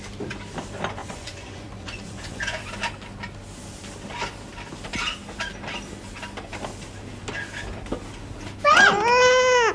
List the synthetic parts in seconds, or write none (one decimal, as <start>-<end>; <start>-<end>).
1.0-2.6